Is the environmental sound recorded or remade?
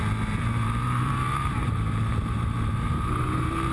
remade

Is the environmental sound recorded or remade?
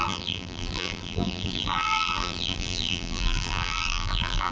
remade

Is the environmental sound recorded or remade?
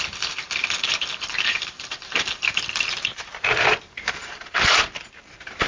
remade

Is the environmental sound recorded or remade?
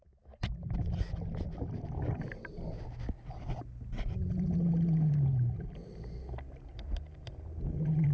recorded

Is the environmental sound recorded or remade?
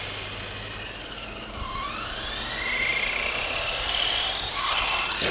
recorded